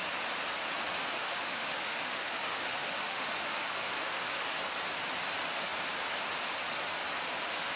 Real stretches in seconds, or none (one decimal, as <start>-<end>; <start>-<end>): 0.0-1.0; 4.3-7.8